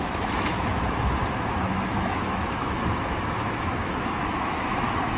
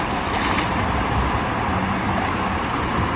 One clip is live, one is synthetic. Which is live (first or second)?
second